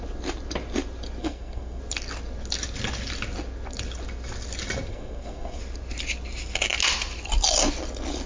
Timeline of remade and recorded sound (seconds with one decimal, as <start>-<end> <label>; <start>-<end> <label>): 0.0-1.2 recorded; 1.2-1.8 remade; 1.8-4.9 recorded; 4.9-5.6 remade; 5.6-8.3 recorded